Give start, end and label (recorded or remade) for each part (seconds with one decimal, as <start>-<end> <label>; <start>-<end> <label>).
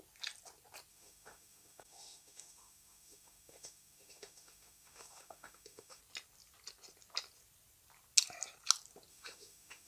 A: 0.0-0.9 recorded; 0.9-6.0 remade; 6.0-9.1 recorded; 9.1-9.9 remade